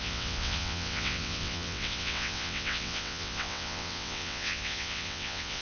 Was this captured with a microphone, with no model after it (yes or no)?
no